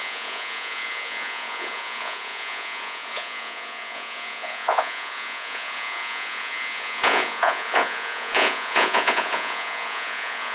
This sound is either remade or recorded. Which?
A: remade